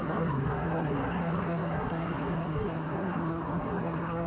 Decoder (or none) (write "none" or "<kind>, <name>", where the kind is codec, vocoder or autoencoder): codec, SNAC